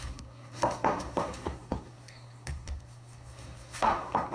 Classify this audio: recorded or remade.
remade